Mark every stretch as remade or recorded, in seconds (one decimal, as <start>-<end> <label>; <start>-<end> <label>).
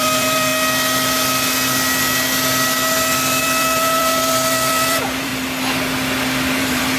0.0-0.5 remade; 0.5-3.4 recorded; 3.4-5.3 remade; 5.3-6.6 recorded; 6.6-7.0 remade